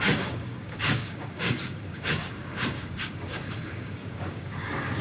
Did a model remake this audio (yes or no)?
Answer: yes